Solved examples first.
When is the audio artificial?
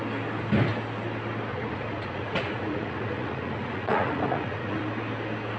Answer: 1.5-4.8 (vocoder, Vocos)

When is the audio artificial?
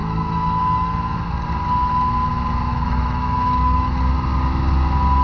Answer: 0.0-1.2 (autoencoder, DAC-VAE); 2.7-4.0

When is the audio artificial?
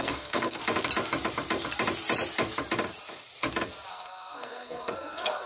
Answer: 0.0-0.6 (codec, SNAC); 3.9-5.5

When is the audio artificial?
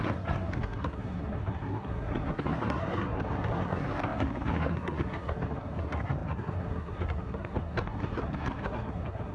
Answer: 0.0-9.3 (codec, SNAC)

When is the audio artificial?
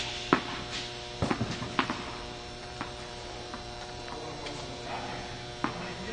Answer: 1.3-4.4 (vocoder, BigVGAN v2)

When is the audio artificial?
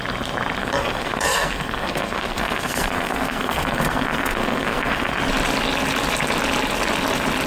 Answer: 0.6-5.1 (codec, SNAC)